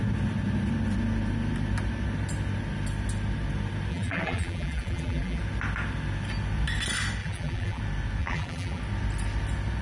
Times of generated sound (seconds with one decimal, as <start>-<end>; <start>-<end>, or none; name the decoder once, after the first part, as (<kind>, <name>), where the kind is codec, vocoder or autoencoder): 3.9-5.4 (vocoder, BigVGAN v2); 7.2-7.8; 8.2-8.8